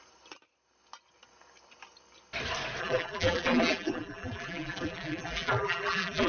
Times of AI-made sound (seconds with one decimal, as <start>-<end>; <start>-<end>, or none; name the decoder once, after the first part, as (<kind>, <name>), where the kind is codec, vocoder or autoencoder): 2.8-6.3 (vocoder, BigVGAN v2)

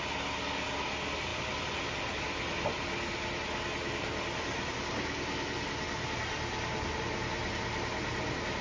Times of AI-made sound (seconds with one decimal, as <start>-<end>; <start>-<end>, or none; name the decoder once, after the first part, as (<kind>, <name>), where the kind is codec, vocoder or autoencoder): none

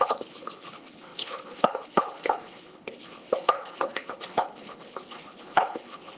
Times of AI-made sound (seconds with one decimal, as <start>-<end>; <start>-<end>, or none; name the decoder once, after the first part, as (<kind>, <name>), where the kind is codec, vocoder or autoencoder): 0.0-6.2 (codec, HILCodec)

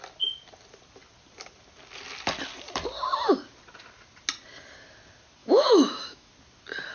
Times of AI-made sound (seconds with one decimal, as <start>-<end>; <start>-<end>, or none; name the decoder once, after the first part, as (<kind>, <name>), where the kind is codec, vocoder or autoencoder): 5.4-6.3 (autoencoder, DAC-VAE)

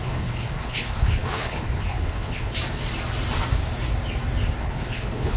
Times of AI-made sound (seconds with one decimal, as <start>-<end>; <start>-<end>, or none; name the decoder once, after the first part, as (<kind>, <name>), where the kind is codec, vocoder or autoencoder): 0.0-2.5 (codec, HILCodec); 4.6-5.4

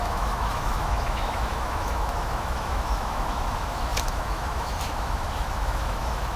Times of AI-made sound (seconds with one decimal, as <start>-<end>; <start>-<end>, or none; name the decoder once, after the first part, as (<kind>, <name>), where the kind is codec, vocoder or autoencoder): 0.0-6.4 (autoencoder, DAC-VAE)

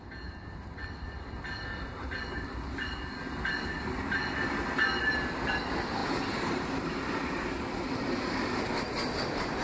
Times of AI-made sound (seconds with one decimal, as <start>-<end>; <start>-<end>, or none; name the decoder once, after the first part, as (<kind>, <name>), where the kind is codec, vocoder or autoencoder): none